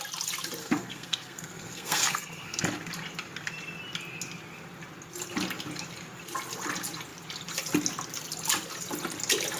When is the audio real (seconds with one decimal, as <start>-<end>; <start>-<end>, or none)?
0.0-0.6; 2.6-9.6